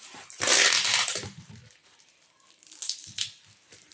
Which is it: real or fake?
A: real